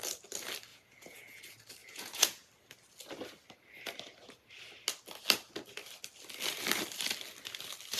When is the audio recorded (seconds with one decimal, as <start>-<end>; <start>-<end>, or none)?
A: 0.0-0.7; 1.4-1.8; 2.5-8.0